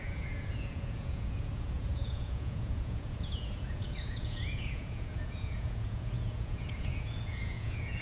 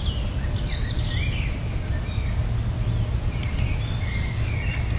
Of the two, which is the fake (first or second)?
first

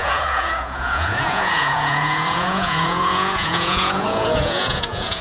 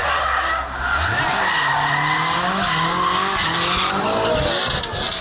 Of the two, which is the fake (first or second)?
first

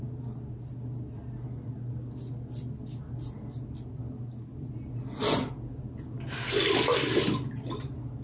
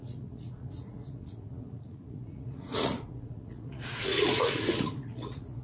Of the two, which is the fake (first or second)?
second